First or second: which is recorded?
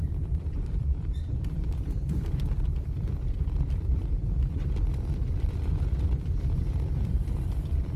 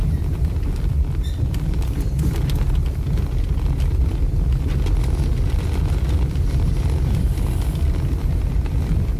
second